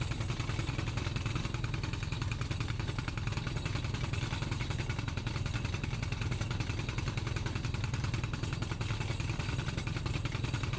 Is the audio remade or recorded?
recorded